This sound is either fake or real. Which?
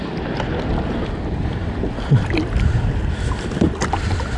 real